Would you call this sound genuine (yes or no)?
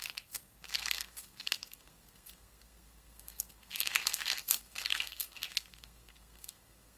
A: no